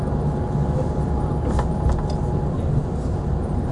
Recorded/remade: recorded